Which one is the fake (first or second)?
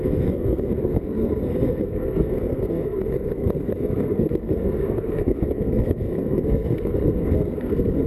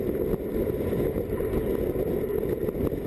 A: first